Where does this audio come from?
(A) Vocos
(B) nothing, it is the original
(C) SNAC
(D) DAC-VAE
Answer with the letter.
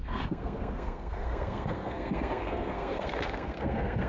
C